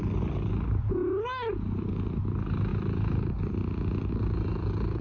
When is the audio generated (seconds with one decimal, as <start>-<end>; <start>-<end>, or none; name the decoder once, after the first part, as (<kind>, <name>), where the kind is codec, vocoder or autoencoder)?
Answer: none